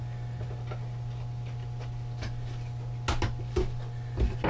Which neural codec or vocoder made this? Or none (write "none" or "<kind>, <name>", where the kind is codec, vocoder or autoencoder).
none